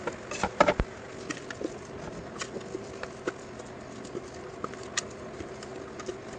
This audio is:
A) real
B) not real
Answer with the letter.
A